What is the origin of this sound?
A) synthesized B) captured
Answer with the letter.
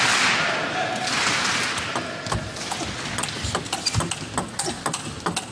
B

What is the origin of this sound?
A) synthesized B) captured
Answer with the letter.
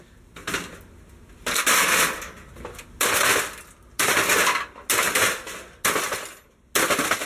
B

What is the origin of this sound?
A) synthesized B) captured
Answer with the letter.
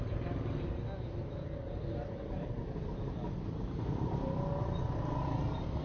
B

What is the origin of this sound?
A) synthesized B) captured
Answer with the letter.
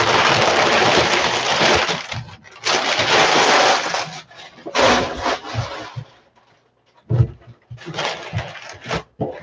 B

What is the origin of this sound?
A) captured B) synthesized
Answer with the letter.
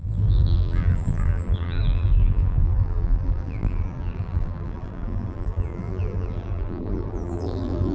B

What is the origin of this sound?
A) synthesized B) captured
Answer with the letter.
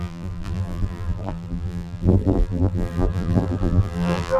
A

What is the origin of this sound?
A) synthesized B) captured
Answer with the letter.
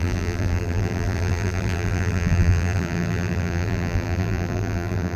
A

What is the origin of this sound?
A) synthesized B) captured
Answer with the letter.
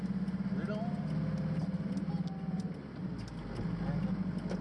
B